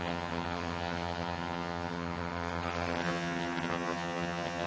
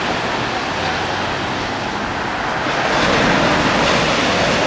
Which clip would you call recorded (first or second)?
second